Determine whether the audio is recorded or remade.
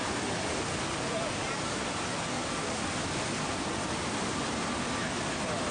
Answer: recorded